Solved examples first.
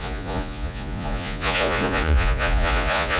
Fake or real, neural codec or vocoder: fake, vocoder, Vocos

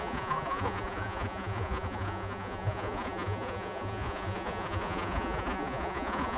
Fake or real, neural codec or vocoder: fake, vocoder, Vocos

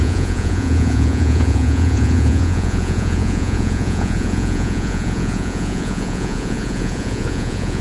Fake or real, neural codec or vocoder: fake, vocoder, Vocos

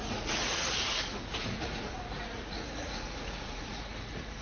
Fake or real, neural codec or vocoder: fake, vocoder, Vocos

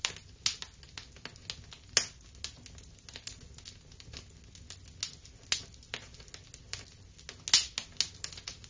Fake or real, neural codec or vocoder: real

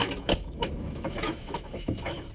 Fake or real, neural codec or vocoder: fake, autoencoder, DAC-VAE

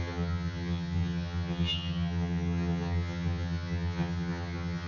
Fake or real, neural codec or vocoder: fake, vocoder, HiFi-GAN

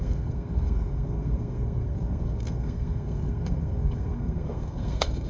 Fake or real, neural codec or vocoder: fake, codec, SNAC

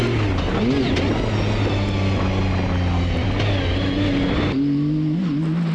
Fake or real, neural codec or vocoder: real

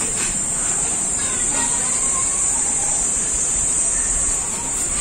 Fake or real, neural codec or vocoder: fake, vocoder, BigVGAN v2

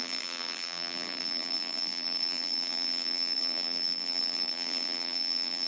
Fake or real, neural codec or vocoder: fake, vocoder, BigVGAN v2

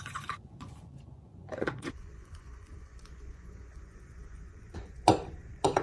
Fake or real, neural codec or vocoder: fake, vocoder, Vocos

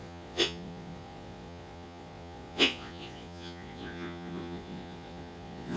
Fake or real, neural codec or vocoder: fake, vocoder, Vocos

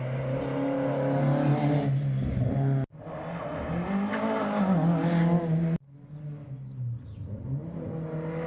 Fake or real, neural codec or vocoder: real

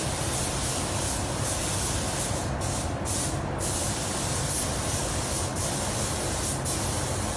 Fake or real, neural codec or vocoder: real